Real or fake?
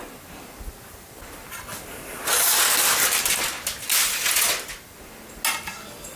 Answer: real